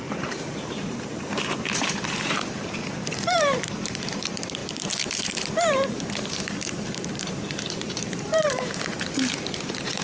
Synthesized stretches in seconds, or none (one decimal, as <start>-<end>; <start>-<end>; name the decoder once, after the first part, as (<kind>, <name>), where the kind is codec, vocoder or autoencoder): 0.0-10.0 (vocoder, BigVGAN v2)